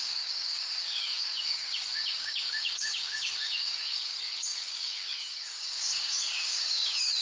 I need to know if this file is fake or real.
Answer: fake